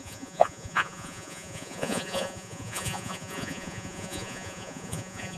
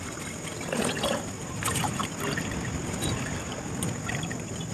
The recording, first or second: second